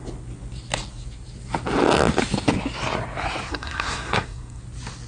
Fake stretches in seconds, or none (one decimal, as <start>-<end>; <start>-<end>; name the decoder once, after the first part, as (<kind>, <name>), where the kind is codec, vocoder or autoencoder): 3.5-4.6 (codec, SNAC)